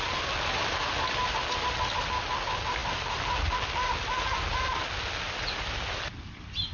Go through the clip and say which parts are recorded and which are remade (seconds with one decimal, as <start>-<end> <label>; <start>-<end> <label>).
0.0-6.7 recorded